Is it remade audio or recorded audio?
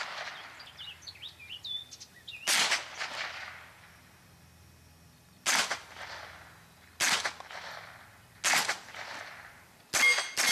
recorded